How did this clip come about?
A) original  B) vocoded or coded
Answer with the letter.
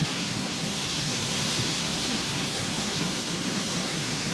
B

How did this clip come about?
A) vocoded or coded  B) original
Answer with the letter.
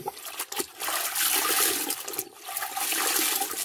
B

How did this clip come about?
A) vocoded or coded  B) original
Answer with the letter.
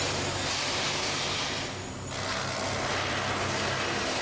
B